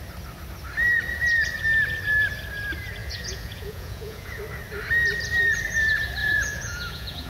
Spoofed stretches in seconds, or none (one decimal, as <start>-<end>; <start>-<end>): 3.0-4.4; 6.2-7.3

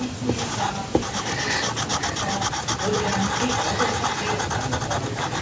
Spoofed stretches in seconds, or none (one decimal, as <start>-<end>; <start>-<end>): none

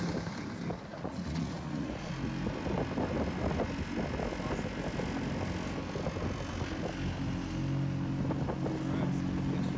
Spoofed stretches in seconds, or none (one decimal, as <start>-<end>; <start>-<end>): 0.9-2.1

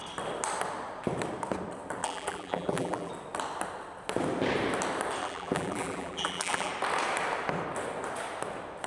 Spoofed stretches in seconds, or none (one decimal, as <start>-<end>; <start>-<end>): 2.0-3.1; 5.2-6.7

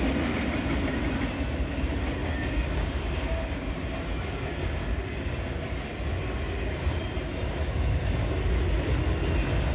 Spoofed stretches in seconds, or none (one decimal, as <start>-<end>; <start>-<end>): 2.2-3.7

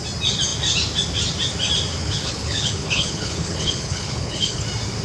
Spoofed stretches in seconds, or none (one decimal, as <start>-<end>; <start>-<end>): 2.0-4.6

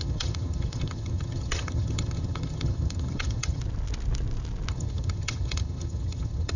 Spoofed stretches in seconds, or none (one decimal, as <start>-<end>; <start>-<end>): 0.0-3.6; 4.7-6.6